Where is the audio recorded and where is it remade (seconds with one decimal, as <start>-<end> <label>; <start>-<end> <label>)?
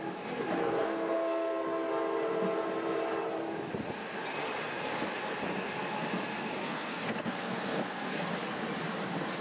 0.0-0.6 recorded; 0.6-1.9 remade; 1.9-6.6 recorded; 6.6-8.3 remade; 8.3-9.4 recorded